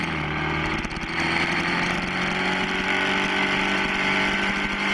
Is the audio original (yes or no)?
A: yes